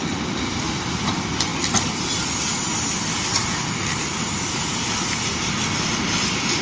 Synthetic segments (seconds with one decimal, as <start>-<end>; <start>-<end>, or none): none